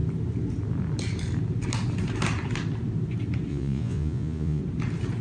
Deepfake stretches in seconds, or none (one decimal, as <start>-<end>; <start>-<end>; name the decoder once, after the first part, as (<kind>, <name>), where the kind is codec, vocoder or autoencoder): 3.5-4.6 (vocoder, Vocos)